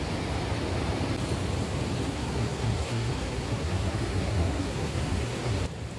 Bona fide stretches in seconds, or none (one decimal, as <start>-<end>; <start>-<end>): 0.0-2.0; 5.6-6.0